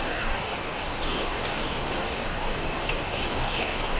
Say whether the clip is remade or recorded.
remade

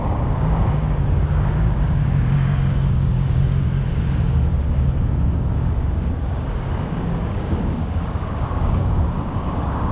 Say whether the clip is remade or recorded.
remade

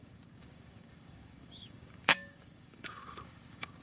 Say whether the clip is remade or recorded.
remade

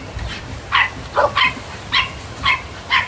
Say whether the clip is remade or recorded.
recorded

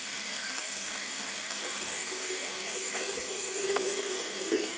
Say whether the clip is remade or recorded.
remade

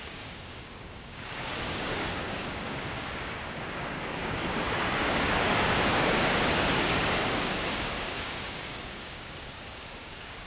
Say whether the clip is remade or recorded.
remade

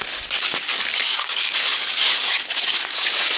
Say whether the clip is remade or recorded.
remade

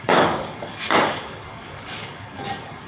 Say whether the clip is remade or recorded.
remade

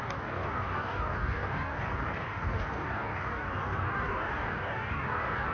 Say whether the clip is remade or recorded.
remade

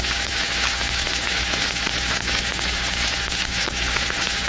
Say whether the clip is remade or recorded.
remade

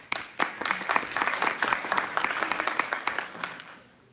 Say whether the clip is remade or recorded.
remade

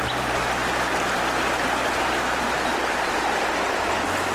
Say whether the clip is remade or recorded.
recorded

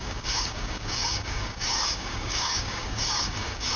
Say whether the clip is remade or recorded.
remade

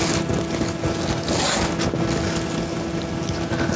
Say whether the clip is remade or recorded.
recorded